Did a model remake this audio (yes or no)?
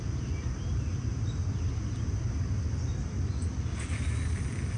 no